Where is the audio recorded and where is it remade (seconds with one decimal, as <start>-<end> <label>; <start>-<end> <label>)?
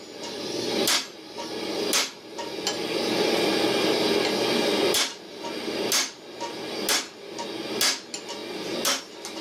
0.0-9.4 recorded